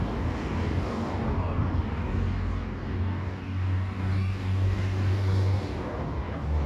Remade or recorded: remade